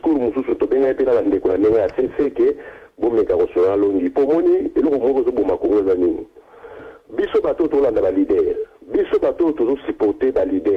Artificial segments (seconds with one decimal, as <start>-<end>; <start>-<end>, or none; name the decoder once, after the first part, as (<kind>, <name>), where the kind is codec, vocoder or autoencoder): 0.5-2.9 (vocoder, Vocos)